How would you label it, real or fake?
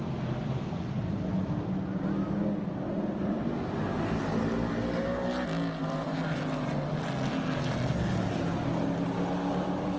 real